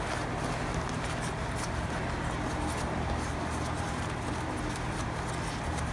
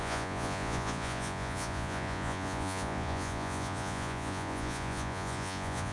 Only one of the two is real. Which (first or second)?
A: first